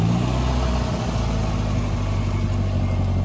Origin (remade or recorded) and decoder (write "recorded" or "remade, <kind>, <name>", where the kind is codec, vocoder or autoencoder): recorded